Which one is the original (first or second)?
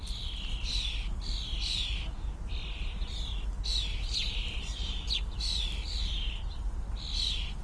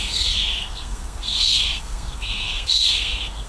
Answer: first